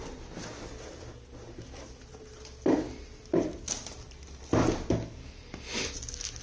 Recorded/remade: recorded